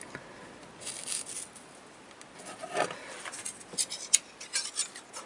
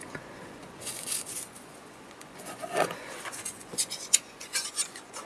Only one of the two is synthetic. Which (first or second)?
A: second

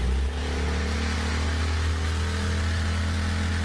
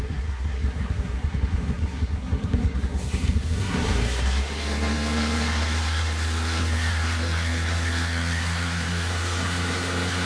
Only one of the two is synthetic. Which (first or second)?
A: second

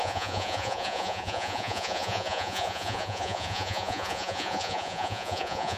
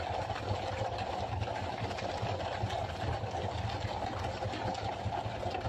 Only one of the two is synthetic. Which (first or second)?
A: first